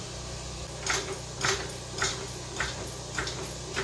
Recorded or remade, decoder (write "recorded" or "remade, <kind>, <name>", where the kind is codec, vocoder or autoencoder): recorded